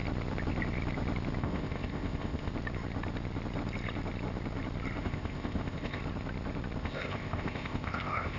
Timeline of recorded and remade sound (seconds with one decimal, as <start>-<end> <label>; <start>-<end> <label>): 0.0-1.4 recorded; 1.4-2.5 remade; 2.5-5.0 recorded; 5.0-6.0 remade; 6.0-6.8 recorded; 6.8-8.4 remade